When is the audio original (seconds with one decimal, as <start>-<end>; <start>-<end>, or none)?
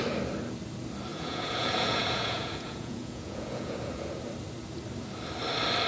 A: 0.0-1.1; 4.2-5.9